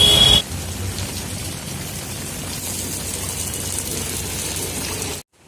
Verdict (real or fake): real